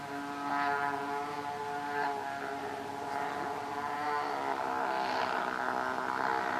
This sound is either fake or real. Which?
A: real